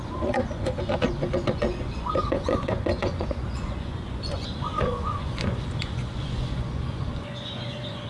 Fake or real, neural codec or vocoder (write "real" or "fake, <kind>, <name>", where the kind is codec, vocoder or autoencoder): fake, vocoder, Vocos